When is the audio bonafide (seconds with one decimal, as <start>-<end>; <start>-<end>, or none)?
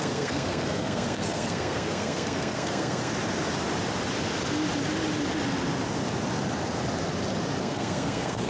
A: 3.1-7.6